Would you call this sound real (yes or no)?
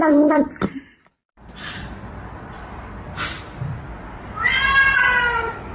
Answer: no